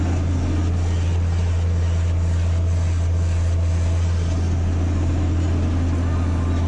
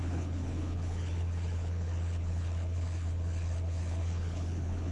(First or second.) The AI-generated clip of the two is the second